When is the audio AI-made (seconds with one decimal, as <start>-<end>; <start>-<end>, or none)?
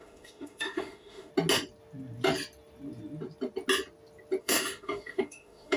0.0-1.3; 4.4-5.8